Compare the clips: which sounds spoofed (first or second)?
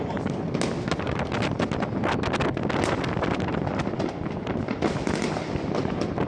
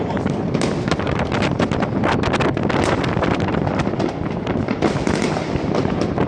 second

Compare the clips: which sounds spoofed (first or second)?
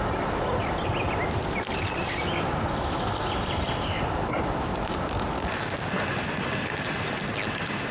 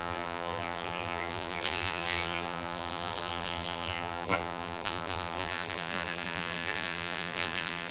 second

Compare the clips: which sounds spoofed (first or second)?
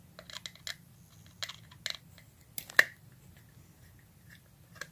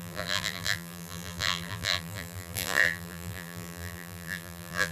second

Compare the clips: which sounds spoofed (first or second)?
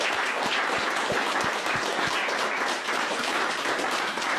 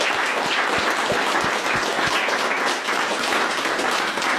first